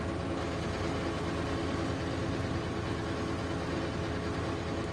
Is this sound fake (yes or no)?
no